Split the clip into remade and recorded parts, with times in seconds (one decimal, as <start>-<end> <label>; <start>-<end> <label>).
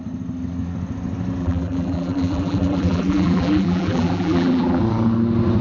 0.0-1.4 recorded; 1.4-4.8 remade; 4.8-5.6 recorded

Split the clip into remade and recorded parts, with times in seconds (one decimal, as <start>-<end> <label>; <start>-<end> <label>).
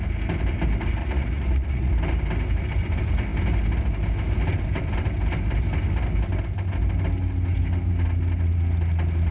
0.0-1.0 recorded; 1.0-1.9 remade; 1.9-9.3 recorded